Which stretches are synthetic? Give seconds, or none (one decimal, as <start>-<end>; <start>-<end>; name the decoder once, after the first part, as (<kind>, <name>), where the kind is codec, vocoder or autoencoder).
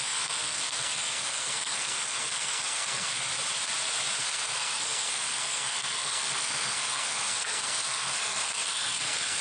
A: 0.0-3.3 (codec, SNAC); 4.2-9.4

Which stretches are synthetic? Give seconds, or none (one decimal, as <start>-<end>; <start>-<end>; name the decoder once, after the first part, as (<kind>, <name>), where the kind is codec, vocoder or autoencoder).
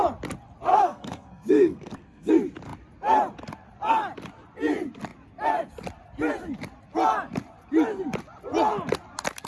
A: 0.7-2.3 (codec, SNAC)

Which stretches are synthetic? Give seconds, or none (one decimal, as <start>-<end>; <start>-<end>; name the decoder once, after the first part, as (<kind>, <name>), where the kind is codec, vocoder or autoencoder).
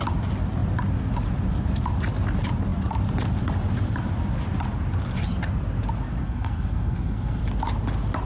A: 6.2-7.4 (codec, SNAC)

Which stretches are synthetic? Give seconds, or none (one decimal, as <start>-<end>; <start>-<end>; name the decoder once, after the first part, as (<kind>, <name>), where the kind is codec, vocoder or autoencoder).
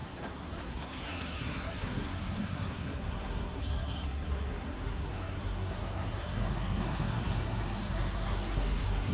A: 0.0-9.1 (codec, SNAC)